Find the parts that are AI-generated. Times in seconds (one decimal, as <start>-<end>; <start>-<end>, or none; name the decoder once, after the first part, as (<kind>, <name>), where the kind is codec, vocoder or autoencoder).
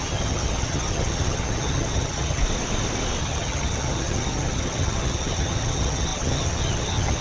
0.0-2.4 (vocoder, HiFi-GAN); 3.2-7.2